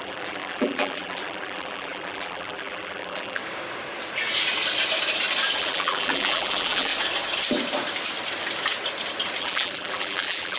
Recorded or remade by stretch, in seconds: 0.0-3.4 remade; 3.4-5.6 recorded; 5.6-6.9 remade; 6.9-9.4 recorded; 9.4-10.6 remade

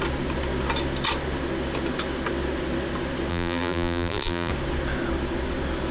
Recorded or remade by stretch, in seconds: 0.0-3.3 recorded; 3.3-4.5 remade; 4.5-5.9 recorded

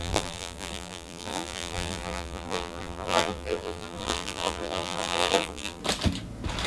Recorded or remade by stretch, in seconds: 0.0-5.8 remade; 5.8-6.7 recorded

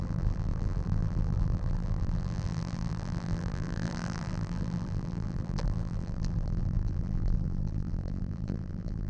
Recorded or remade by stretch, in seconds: 0.0-9.1 remade

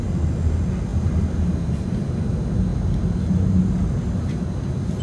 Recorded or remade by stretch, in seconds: 0.0-0.9 recorded; 0.9-2.3 remade; 2.3-5.0 recorded

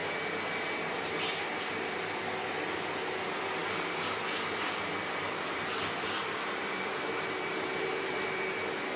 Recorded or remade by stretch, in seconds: 0.0-2.7 recorded; 2.7-9.0 remade

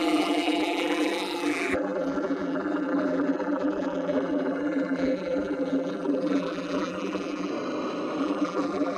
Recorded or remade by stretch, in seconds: 0.0-7.5 remade; 7.5-8.2 recorded; 8.2-9.0 remade

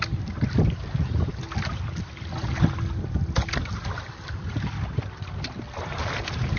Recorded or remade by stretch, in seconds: 0.0-1.3 remade; 1.3-3.7 recorded; 3.7-6.6 remade